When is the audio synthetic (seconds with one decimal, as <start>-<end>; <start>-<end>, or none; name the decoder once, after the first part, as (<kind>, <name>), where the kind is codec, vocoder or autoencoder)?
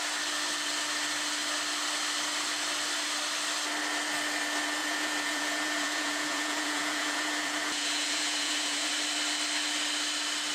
4.8-8.9 (vocoder, Vocos)